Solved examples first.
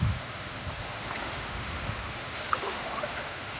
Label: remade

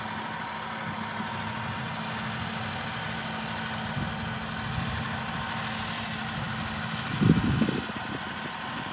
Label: recorded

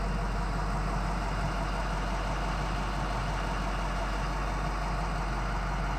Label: recorded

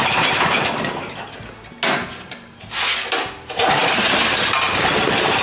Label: recorded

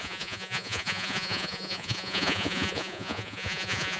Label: remade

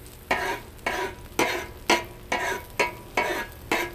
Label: recorded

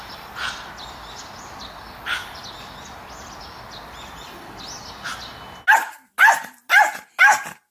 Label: recorded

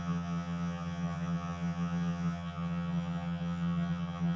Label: remade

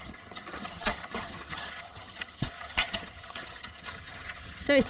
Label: remade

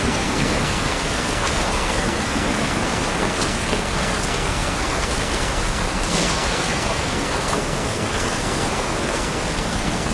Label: remade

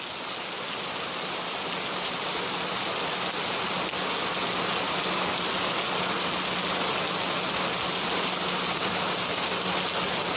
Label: recorded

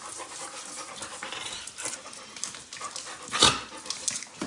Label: recorded